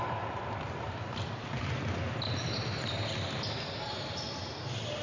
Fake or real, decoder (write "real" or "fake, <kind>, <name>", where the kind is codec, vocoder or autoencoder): real